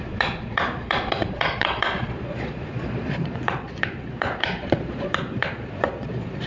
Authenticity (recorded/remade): remade